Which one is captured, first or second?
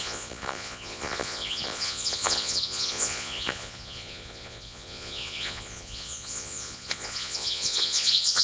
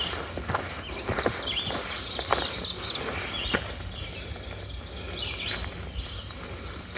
second